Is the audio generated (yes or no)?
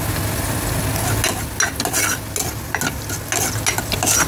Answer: no